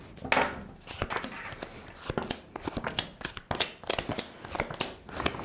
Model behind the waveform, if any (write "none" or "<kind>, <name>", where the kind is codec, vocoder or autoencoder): none